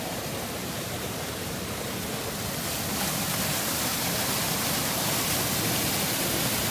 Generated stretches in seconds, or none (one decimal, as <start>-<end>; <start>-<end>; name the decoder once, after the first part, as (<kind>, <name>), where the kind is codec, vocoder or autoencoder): 0.6-1.5 (vocoder, BigVGAN v2); 3.9-5.0